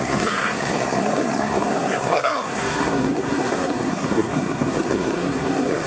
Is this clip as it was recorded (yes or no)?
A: no